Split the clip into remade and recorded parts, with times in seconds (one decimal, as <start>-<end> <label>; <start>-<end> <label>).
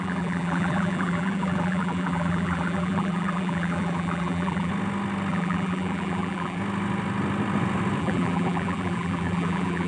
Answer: 0.0-4.7 remade; 4.7-5.3 recorded; 5.3-6.6 remade; 6.6-8.0 recorded; 8.0-9.9 remade